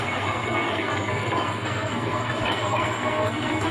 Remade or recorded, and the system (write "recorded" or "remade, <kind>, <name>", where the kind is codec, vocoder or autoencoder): remade, codec, SNAC